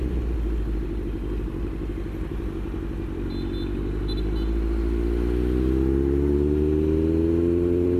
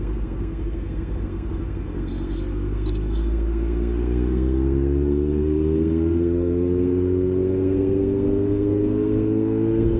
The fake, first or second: second